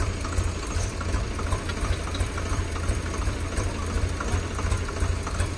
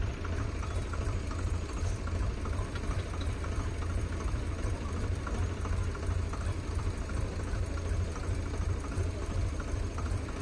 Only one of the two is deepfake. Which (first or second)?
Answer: second